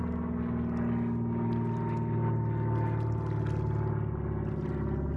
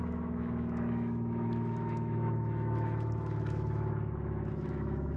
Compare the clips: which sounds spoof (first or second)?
second